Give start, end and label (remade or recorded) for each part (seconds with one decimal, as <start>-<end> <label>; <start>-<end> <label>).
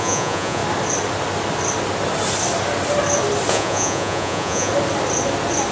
0.0-0.6 remade; 0.6-3.5 recorded; 3.5-4.7 remade; 4.7-5.7 recorded